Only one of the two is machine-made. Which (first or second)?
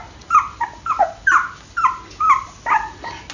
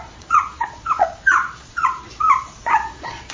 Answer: second